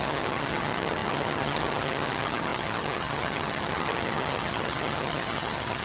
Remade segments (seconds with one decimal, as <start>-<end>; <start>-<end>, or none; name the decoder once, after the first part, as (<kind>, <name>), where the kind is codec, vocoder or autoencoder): 0.0-5.8 (vocoder, HiFi-GAN)